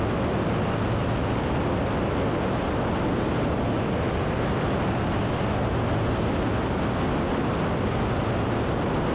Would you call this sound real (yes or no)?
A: yes